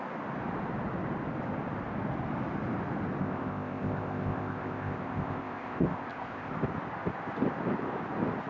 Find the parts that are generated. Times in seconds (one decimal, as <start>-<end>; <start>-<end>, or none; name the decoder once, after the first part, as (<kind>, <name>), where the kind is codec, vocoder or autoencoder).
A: 3.2-6.5 (codec, ZipCodec)